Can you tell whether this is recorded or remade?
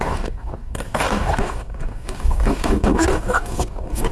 remade